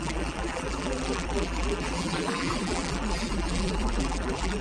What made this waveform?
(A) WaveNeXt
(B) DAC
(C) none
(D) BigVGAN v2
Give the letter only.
D